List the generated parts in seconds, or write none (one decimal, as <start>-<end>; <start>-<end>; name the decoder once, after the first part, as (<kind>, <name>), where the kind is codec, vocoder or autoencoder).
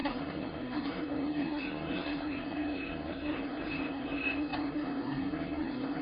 0.0-6.0 (codec, SNAC)